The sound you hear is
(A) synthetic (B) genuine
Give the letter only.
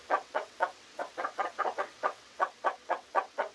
A